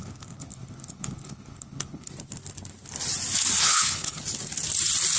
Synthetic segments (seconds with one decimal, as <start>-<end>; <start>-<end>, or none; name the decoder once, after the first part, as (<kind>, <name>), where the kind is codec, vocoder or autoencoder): 0.0-2.1 (codec, HILCodec); 3.6-4.2